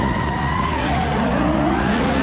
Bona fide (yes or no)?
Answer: no